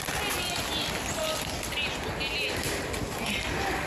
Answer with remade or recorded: recorded